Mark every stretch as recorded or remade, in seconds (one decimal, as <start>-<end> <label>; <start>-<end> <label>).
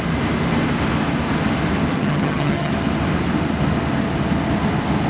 0.0-1.9 recorded; 1.9-2.7 remade; 2.7-5.1 recorded